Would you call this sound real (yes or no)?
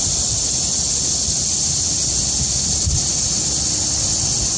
yes